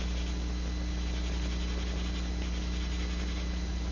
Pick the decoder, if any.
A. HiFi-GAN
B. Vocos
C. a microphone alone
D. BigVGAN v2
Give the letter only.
C